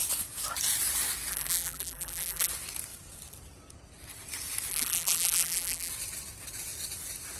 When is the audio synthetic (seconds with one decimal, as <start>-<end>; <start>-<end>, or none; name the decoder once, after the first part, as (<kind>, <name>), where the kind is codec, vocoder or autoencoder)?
1.3-2.5 (vocoder, BigVGAN v2); 4.7-5.9